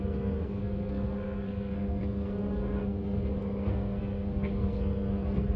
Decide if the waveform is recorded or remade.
remade